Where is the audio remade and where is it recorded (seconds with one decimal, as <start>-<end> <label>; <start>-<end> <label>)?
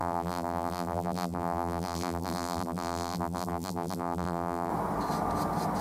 0.0-4.7 remade; 4.7-5.8 recorded